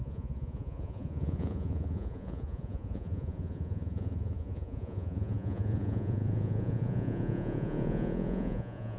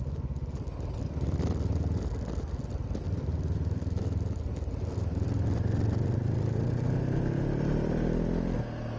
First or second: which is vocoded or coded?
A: first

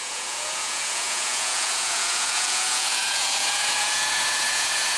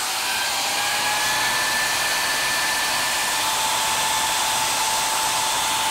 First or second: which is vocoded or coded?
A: first